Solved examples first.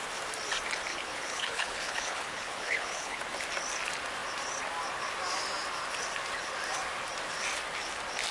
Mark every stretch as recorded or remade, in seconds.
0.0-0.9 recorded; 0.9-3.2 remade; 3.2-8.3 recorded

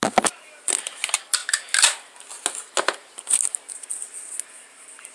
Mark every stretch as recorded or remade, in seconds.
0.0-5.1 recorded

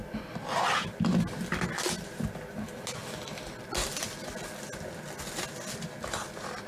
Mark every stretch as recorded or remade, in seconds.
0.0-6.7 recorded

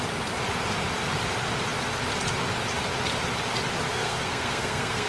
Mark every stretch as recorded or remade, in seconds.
0.0-3.9 recorded; 3.9-5.1 remade